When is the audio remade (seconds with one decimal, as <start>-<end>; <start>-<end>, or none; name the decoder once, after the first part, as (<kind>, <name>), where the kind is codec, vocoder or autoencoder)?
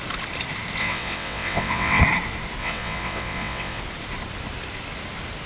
0.8-2.0 (vocoder, WaveNeXt); 2.6-3.8